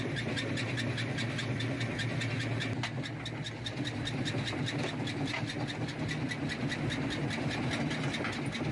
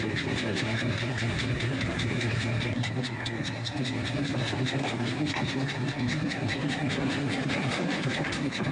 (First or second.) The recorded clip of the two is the first